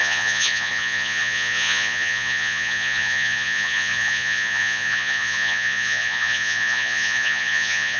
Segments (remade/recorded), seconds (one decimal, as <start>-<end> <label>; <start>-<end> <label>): 0.0-8.0 remade